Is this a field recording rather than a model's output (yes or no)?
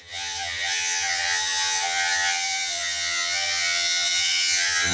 no